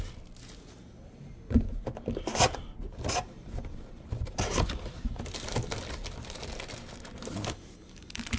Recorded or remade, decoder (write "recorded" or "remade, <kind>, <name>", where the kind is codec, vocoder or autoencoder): recorded